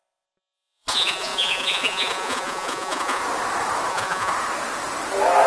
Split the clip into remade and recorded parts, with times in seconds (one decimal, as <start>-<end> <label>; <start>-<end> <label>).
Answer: 0.0-3.2 remade; 3.2-3.9 recorded; 3.9-4.3 remade; 4.3-5.5 recorded